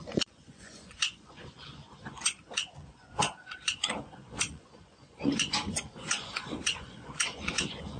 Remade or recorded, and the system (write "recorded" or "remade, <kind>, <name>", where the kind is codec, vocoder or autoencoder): remade, vocoder, Vocos